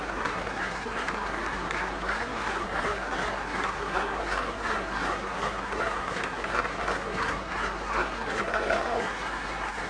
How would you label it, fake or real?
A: fake